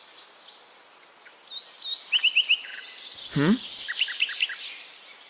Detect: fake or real real